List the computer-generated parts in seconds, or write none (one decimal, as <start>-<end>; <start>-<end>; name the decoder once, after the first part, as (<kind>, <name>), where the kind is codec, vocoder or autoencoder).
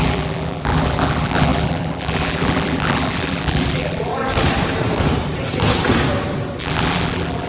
0.0-4.1 (vocoder, BigVGAN v2); 6.6-7.5